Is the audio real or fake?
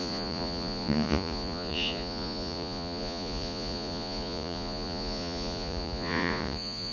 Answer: fake